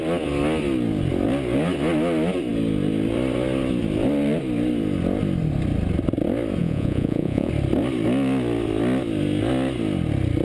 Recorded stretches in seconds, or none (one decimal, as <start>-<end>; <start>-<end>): 0.0-6.6; 7.5-10.4